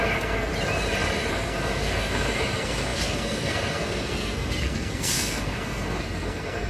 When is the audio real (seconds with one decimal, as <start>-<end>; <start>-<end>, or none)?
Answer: 0.5-1.3